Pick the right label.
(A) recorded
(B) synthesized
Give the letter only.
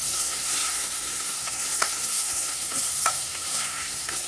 B